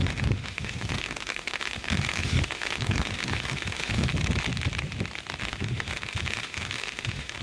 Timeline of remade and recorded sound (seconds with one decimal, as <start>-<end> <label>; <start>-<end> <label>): 0.0-4.1 remade; 4.1-5.4 recorded; 5.4-7.4 remade